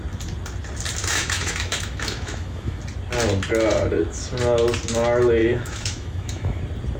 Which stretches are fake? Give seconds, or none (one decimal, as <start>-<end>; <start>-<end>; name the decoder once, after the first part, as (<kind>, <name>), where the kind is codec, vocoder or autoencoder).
1.0-2.8 (autoencoder, DAC-VAE); 5.4-6.6